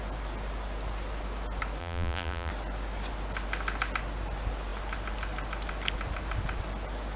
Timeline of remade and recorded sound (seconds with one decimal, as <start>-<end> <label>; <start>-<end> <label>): 0.0-1.8 recorded; 1.8-2.5 remade; 2.5-7.2 recorded